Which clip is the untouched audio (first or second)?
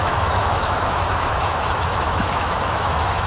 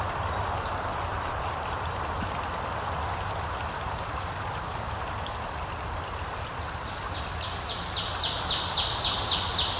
second